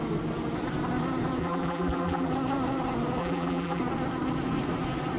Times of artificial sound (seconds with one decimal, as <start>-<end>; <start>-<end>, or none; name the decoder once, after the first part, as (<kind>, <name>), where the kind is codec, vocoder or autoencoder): 1.4-2.3 (vocoder, BigVGAN v2); 3.2-3.8